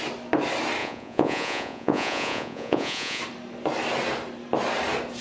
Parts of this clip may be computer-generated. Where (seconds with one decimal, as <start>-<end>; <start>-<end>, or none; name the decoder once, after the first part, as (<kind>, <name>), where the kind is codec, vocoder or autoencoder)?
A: 0.8-3.2 (vocoder, Vocos)